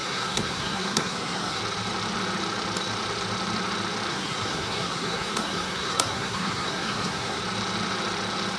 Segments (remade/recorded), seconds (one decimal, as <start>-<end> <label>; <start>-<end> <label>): 0.0-1.6 remade; 1.6-4.1 recorded; 4.1-7.4 remade; 7.4-8.6 recorded